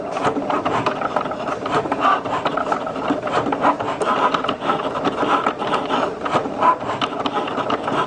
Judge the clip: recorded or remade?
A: remade